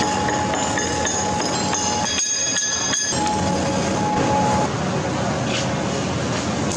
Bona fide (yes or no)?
yes